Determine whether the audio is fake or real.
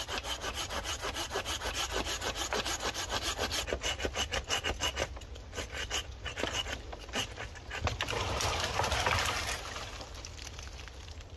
real